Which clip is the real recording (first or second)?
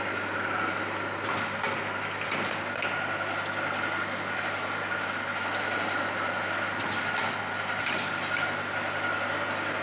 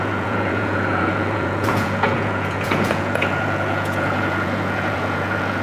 first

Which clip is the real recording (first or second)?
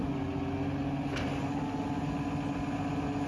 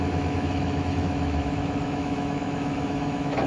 first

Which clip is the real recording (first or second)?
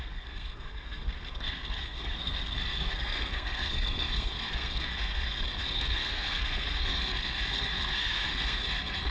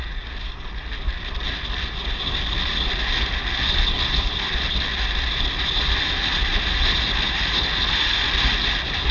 second